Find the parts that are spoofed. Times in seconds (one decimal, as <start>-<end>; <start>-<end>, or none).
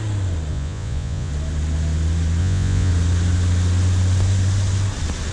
0.5-1.3; 2.4-2.9